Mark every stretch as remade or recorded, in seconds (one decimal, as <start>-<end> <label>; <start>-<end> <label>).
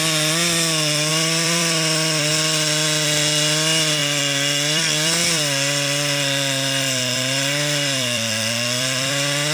0.0-1.1 recorded; 1.1-2.3 remade; 2.3-4.0 recorded; 4.0-9.1 remade; 9.1-9.5 recorded